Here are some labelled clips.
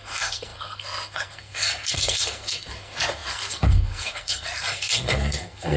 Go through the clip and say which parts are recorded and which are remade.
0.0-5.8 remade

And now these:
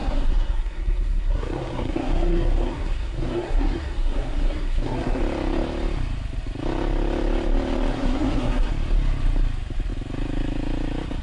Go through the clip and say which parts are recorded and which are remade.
0.0-5.2 remade; 5.2-7.9 recorded; 7.9-8.7 remade; 8.7-11.2 recorded

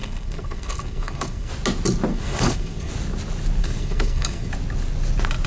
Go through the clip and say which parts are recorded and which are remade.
0.0-1.5 remade; 1.5-2.1 recorded; 2.1-2.9 remade; 2.9-3.6 recorded; 3.6-4.5 remade; 4.5-5.5 recorded

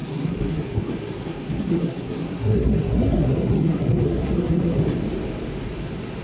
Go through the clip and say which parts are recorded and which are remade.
0.0-4.8 remade; 4.8-6.2 recorded

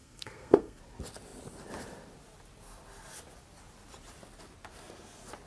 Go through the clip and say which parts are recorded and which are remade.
0.0-0.8 remade; 0.8-5.5 recorded

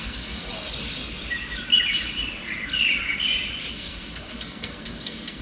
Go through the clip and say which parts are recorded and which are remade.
0.0-0.5 remade; 0.5-3.7 recorded; 3.7-5.4 remade

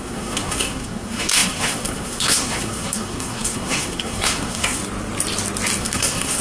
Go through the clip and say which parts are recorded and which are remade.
0.0-4.8 remade; 4.8-5.8 recorded; 5.8-6.4 remade

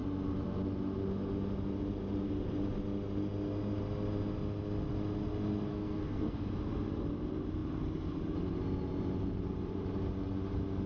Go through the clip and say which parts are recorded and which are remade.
0.0-5.7 recorded; 5.7-6.5 remade; 6.5-10.9 recorded